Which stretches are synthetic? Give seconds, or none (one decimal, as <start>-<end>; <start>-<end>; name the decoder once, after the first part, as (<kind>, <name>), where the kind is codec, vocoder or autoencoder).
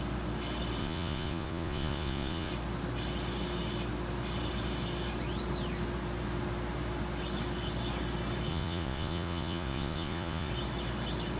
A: 0.8-2.5 (vocoder, Vocos); 8.5-10.5